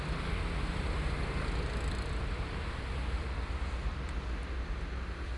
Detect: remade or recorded recorded